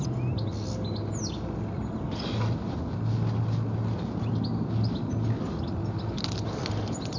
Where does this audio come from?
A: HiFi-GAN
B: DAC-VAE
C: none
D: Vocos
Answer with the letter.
C